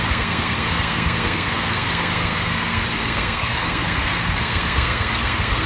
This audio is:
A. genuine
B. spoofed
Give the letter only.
B